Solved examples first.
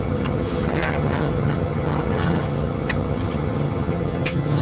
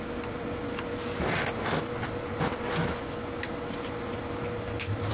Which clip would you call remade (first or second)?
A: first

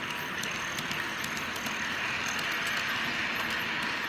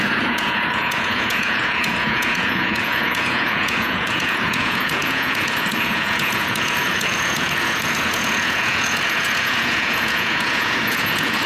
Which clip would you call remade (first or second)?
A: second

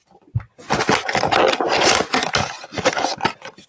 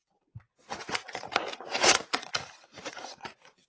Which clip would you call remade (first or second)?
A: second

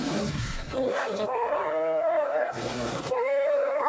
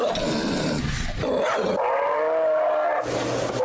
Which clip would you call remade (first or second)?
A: first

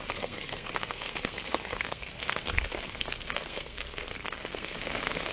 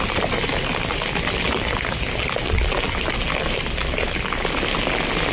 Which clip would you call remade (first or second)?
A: first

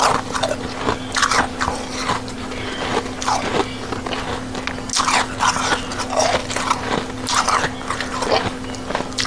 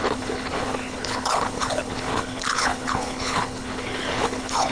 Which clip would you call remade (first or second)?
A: second